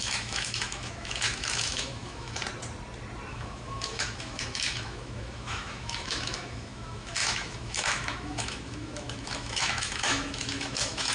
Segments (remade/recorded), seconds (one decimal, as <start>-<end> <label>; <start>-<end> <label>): 0.0-2.4 remade; 2.4-3.3 recorded; 3.3-11.1 remade